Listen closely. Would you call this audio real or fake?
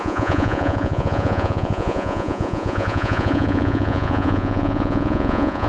fake